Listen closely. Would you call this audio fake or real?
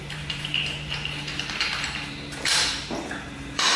fake